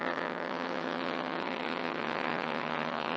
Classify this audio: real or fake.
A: fake